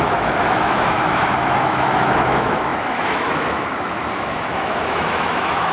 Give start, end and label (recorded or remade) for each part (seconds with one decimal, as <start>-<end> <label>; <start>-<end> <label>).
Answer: 0.0-5.7 remade